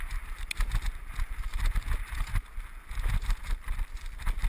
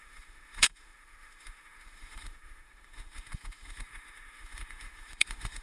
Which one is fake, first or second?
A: second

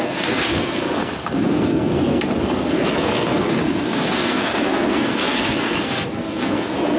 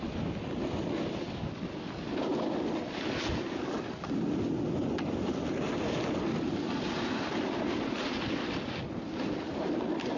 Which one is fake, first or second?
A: first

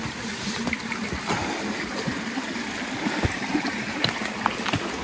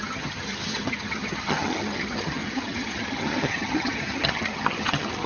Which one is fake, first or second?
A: second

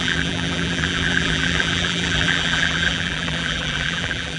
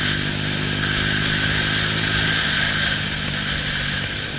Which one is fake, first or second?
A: first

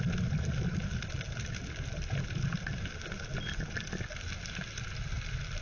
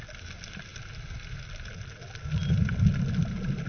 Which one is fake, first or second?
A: first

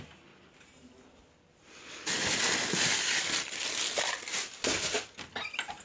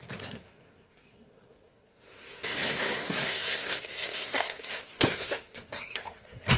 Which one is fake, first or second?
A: second